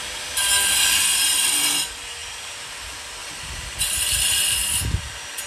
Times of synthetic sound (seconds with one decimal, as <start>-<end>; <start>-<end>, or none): 3.2-4.5